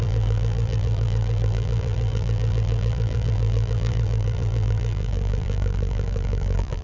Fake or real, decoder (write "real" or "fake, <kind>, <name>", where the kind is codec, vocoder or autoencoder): fake, vocoder, BigVGAN v2